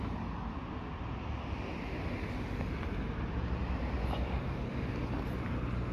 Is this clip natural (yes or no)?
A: yes